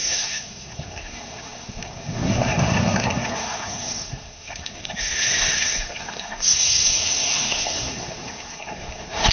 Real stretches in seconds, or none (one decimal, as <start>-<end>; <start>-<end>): none